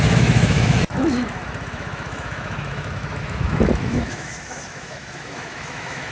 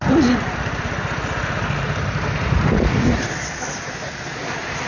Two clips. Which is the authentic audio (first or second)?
second